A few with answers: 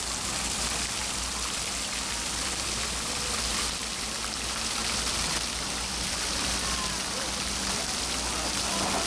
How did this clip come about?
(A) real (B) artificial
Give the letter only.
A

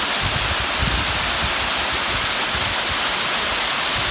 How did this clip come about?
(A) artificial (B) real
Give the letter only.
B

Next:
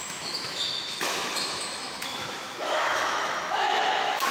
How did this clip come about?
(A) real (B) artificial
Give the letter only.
B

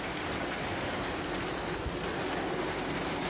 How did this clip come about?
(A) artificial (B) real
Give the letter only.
B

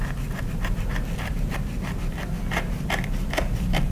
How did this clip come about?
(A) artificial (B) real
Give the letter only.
B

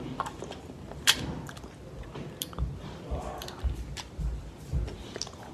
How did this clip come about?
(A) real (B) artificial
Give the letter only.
A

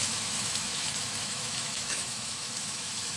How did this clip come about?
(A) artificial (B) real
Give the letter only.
A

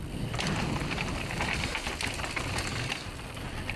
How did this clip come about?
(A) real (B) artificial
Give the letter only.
A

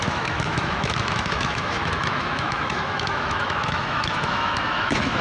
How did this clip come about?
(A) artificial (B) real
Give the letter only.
A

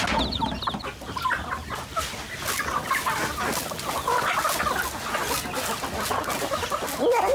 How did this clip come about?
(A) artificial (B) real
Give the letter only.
B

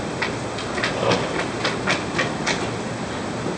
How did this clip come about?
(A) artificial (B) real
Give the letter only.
B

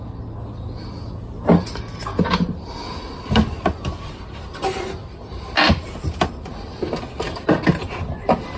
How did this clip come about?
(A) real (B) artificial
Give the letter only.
A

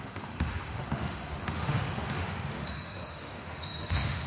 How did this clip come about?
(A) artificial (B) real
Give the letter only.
A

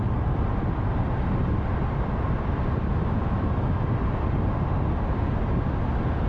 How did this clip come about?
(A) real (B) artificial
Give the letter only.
A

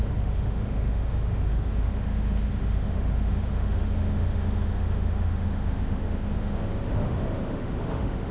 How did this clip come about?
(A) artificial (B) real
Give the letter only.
A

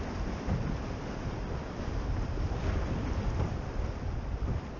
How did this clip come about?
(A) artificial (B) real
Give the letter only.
B